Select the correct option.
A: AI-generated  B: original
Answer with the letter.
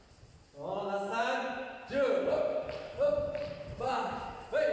B